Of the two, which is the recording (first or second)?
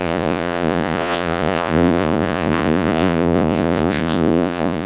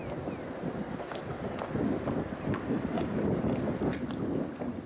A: second